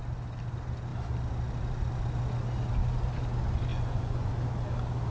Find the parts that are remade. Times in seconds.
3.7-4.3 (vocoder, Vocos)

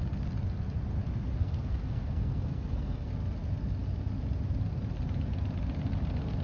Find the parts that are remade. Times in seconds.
1.4-3.1 (codec, SNAC)

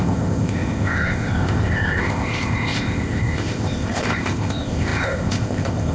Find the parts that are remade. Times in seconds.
0.0-5.9 (codec, ZipCodec)

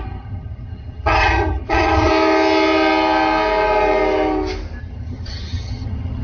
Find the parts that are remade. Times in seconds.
0.0-2.1 (vocoder, HiFi-GAN); 4.8-6.2